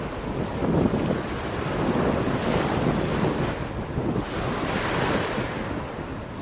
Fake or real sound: real